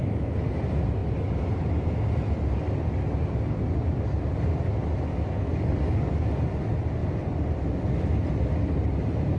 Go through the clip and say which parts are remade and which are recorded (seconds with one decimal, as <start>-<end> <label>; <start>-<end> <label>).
0.0-5.1 recorded; 5.1-6.3 remade; 6.3-9.4 recorded